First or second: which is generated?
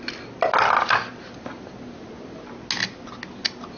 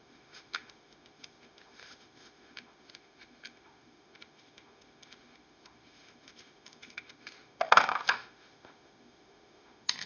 second